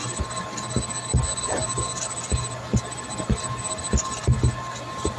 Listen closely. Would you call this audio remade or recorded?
recorded